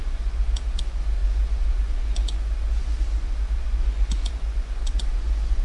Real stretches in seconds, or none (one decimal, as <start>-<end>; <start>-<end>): none